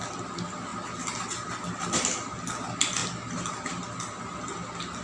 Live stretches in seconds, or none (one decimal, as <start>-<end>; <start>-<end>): 0.0-5.0